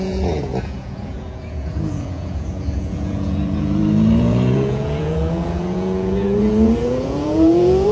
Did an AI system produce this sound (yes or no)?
yes